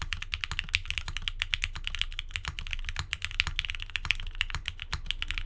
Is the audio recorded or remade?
recorded